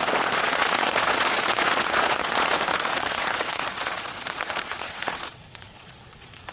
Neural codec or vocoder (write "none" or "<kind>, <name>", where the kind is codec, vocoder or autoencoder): vocoder, Vocos